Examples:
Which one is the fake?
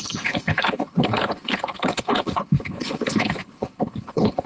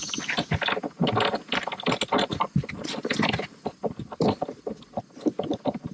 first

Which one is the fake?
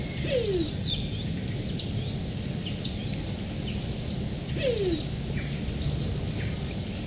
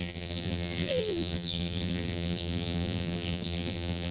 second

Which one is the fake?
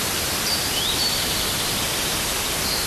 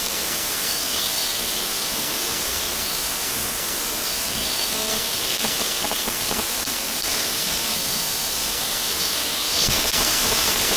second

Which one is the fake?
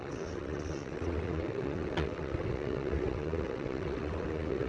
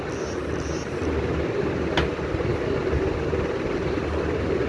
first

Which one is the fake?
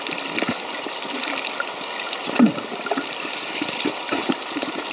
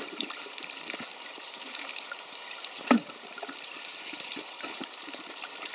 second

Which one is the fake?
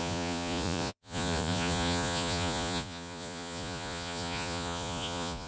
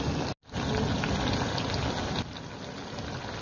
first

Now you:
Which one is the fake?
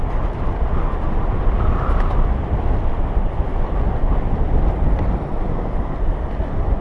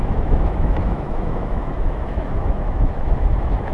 second